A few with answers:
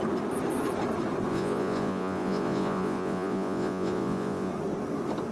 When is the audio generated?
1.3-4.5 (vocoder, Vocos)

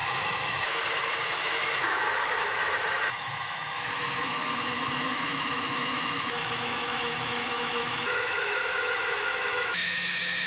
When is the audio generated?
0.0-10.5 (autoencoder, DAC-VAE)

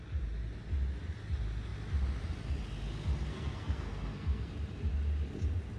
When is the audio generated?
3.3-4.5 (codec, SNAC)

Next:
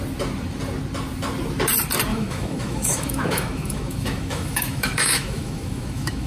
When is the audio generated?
2.1-6.3 (autoencoder, DAC-VAE)

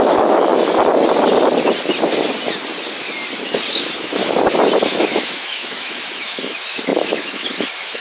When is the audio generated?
0.0-0.5 (autoencoder, DAC-VAE); 3.7-4.2; 4.8-8.0

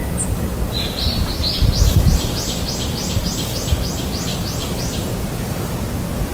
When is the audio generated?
4.3-5.7 (vocoder, BigVGAN v2)

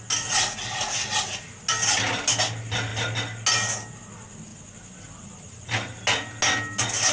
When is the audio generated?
none

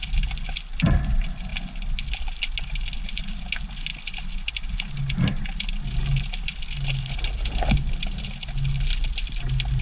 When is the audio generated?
none